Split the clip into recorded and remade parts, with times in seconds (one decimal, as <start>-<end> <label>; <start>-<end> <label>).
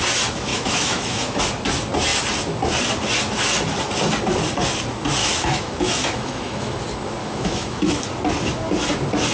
0.0-0.5 recorded; 0.5-1.4 remade; 1.4-5.2 recorded; 5.2-6.8 remade; 6.8-7.2 recorded; 7.2-8.0 remade; 8.0-9.3 recorded